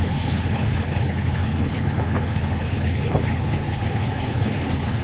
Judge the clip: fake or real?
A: fake